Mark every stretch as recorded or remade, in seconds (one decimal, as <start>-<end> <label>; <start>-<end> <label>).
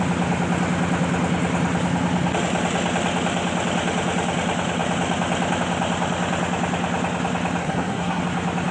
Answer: 0.0-7.6 recorded; 7.6-8.2 remade; 8.2-8.7 recorded